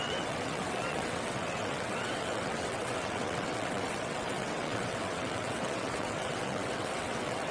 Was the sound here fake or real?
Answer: fake